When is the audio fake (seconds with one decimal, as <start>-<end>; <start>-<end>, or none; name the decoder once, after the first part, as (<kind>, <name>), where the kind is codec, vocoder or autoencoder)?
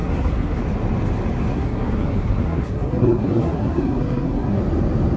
0.0-0.6 (codec, SNAC); 1.5-4.6